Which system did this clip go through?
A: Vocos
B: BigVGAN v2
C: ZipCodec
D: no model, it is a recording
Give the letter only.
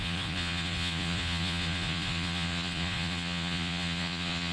A